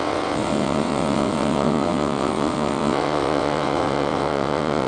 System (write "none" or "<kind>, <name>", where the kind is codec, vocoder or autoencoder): vocoder, WaveNeXt